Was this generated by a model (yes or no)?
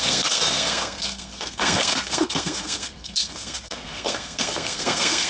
yes